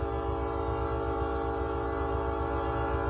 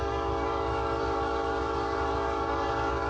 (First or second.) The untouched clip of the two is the first